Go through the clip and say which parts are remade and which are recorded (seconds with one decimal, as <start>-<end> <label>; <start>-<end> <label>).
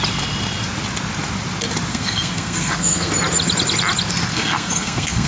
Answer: 0.0-1.9 recorded; 1.9-3.1 remade; 3.1-4.3 recorded; 4.3-5.3 remade